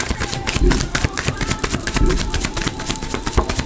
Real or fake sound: fake